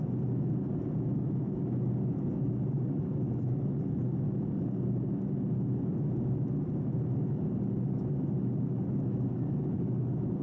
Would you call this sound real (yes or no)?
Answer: yes